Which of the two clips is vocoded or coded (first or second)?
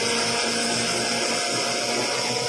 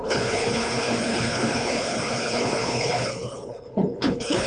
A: second